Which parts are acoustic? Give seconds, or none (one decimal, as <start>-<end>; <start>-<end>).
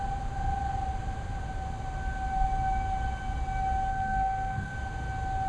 0.0-3.9; 4.7-5.5